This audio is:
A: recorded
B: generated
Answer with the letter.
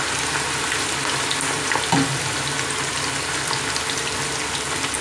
A